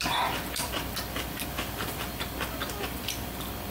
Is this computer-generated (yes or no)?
yes